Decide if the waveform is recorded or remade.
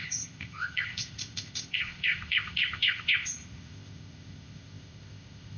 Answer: remade